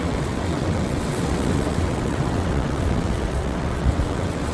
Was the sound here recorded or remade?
remade